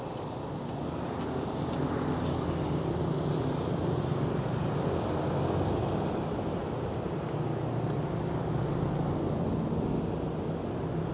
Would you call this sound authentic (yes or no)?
yes